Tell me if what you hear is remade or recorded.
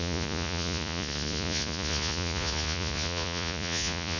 remade